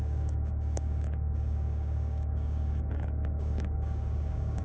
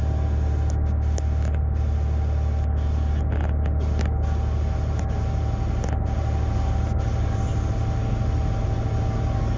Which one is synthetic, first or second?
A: first